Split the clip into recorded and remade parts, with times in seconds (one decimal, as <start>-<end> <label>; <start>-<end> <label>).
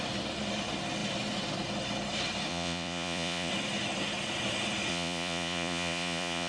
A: 0.0-2.5 recorded; 2.5-3.5 remade; 3.5-4.9 recorded; 4.9-6.5 remade